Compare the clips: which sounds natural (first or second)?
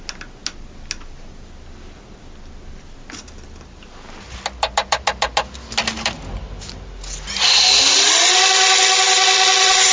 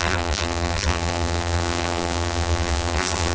first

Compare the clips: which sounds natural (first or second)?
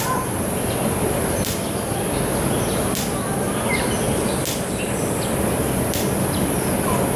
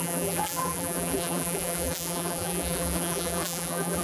first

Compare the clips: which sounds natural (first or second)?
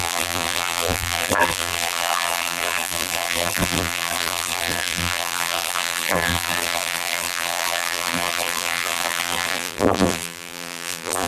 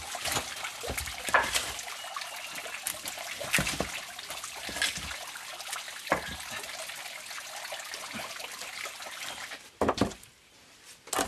second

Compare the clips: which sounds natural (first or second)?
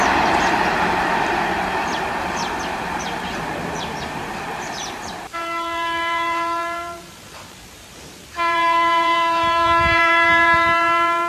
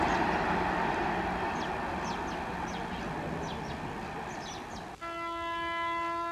second